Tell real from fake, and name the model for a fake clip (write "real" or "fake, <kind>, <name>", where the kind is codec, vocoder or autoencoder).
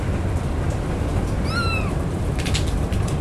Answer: real